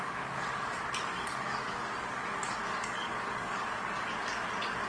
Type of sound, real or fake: fake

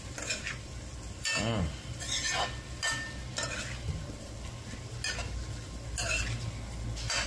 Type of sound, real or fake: real